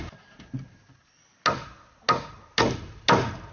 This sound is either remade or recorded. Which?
recorded